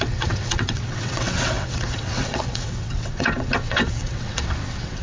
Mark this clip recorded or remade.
remade